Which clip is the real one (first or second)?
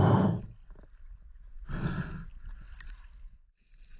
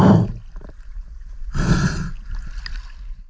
second